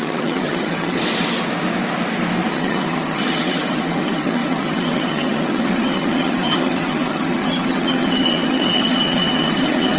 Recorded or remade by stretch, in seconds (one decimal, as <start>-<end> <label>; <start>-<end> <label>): 0.0-1.0 remade; 1.0-2.5 recorded; 2.5-10.0 remade